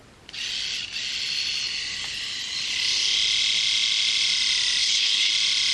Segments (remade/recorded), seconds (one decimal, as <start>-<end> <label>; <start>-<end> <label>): 0.0-4.8 recorded; 4.8-5.3 remade; 5.3-5.7 recorded